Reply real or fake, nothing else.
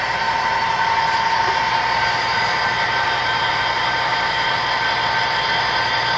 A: real